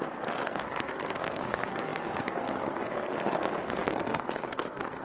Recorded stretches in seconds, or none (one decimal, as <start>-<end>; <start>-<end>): none